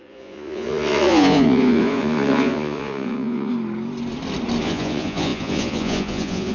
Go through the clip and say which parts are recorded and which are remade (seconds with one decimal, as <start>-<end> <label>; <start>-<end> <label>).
0.0-3.5 remade; 3.5-4.6 recorded; 4.6-6.5 remade